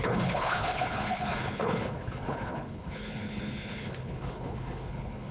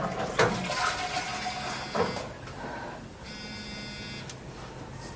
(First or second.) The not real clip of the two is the first